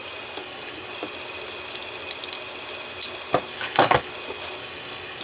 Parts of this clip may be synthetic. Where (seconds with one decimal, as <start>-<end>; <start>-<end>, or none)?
0.4-0.9; 3.5-4.1; 4.6-5.2